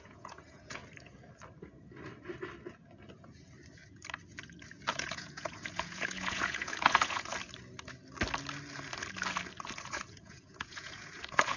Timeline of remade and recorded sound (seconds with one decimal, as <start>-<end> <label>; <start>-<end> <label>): 0.0-0.8 remade; 0.8-4.9 recorded; 4.9-7.3 remade; 7.3-9.8 recorded; 9.8-11.6 remade